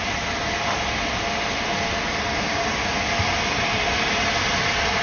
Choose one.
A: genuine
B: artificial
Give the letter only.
A